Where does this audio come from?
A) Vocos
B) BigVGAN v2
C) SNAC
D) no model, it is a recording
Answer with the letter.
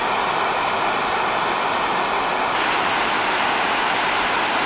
D